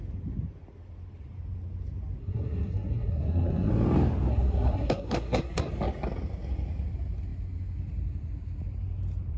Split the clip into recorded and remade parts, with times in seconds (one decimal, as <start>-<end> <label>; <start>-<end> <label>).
0.0-2.2 recorded; 2.2-3.7 remade; 3.7-4.3 recorded; 4.3-5.7 remade; 5.7-9.4 recorded